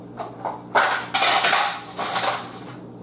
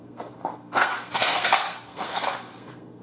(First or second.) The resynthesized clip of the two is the second